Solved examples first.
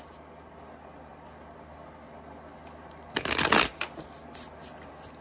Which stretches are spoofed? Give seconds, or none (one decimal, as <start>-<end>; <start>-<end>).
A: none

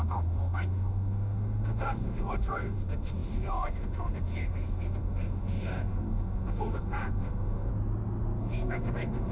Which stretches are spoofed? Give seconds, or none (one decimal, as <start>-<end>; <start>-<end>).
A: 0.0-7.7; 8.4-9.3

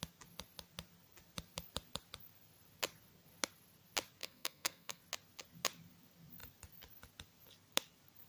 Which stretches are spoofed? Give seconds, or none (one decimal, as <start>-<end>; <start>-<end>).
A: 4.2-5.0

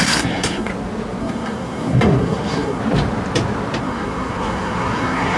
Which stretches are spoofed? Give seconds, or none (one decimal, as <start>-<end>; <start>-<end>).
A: 0.0-0.7; 1.2-2.8; 3.8-5.4